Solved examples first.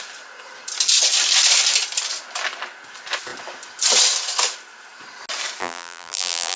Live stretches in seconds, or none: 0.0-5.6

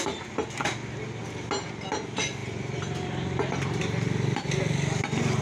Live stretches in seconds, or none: 0.0-2.4; 3.8-5.4

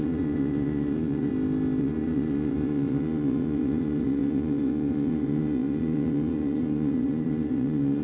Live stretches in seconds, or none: 1.3-1.8

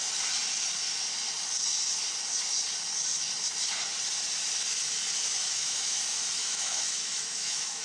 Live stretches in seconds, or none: 0.0-5.2; 6.0-6.4

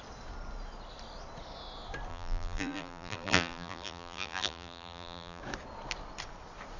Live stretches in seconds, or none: 0.0-2.1; 5.4-6.8